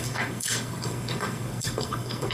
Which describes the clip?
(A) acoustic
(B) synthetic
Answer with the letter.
B